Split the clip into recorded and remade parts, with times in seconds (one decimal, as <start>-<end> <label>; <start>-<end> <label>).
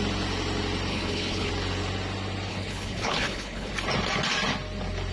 0.0-0.9 recorded; 0.9-1.5 remade; 1.5-2.5 recorded; 2.5-3.7 remade; 3.7-5.1 recorded